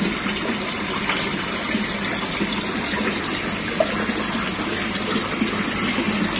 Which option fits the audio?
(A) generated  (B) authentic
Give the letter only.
B